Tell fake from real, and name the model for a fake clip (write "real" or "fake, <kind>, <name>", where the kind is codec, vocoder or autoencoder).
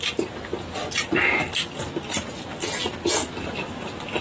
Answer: real